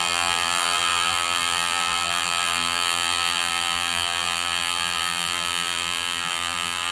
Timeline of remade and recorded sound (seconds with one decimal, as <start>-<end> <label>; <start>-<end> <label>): 0.0-6.9 remade